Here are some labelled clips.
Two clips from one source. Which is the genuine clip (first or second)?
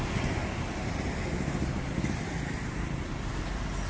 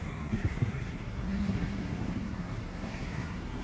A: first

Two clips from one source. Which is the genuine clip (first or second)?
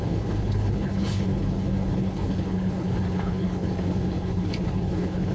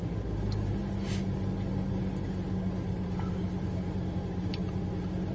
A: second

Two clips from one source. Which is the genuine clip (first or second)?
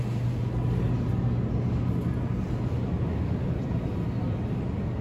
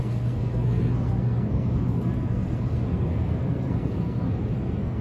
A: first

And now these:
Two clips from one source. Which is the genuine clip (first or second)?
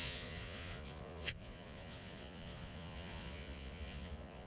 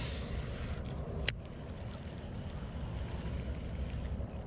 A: second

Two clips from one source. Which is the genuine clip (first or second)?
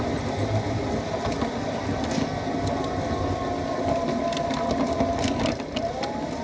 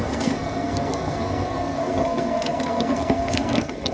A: first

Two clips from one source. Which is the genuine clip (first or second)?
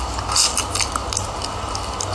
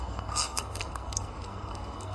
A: first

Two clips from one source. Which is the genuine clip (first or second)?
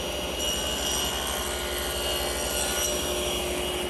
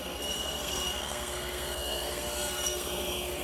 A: first